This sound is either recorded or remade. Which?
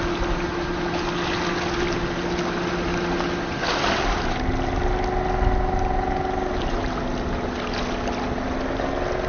recorded